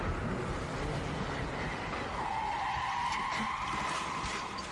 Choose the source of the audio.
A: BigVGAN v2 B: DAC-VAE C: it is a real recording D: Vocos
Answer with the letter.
C